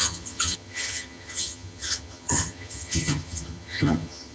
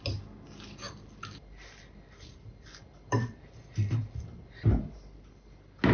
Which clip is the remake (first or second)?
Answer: first